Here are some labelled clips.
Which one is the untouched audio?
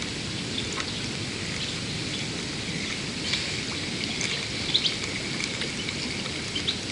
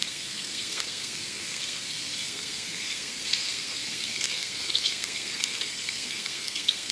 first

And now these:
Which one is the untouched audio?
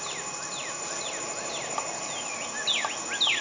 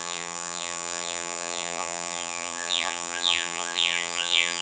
first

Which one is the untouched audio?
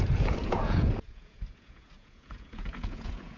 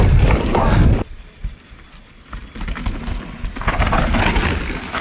second